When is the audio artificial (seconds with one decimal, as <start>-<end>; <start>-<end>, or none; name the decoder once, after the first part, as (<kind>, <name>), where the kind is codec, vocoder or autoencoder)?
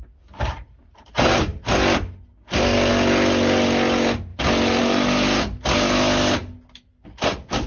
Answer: none